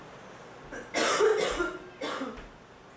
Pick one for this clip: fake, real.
real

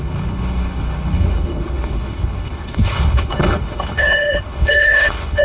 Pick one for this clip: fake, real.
fake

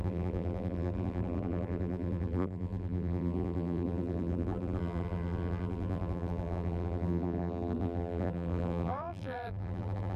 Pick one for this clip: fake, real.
fake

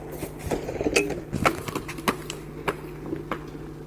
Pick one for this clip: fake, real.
real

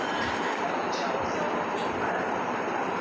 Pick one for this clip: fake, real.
real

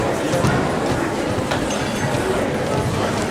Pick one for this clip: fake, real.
real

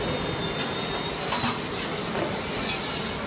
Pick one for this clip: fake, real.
real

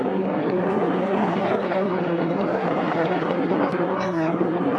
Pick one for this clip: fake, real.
fake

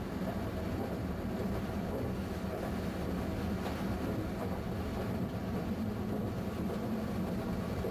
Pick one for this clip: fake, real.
real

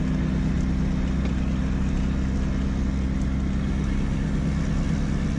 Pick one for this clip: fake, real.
real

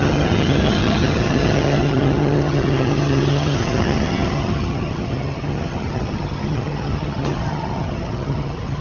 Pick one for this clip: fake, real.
fake